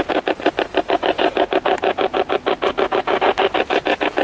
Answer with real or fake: real